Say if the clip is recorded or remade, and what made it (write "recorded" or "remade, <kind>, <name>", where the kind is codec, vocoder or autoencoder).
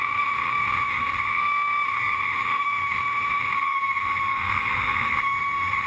remade, autoencoder, DAC-VAE